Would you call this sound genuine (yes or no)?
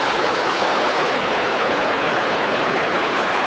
no